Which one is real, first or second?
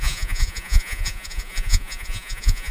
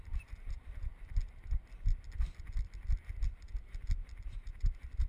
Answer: second